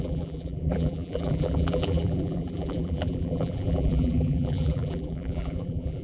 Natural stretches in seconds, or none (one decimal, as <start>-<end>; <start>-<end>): none